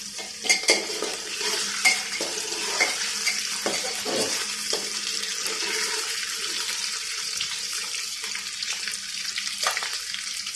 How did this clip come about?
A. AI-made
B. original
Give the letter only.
A